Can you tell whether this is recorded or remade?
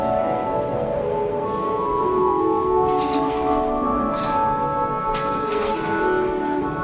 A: remade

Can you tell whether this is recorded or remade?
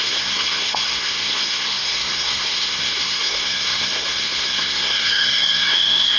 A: remade